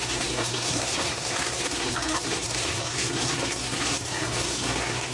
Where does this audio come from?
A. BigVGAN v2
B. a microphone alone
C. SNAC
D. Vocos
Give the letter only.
C